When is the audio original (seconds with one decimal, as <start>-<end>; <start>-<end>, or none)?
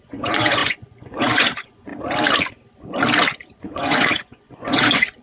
1.9-3.6